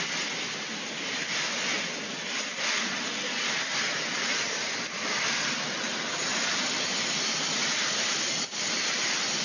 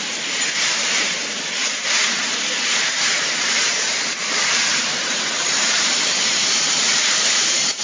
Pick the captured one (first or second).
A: first